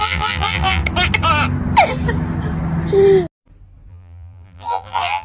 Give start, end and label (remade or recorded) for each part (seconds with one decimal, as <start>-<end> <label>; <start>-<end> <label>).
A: 0.0-0.8 remade; 0.8-3.9 recorded; 3.9-5.2 remade